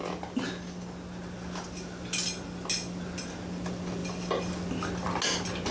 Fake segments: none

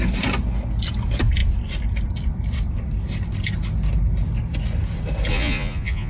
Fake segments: 5.3-6.1 (vocoder, Vocos)